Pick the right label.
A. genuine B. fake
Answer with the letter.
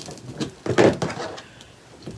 A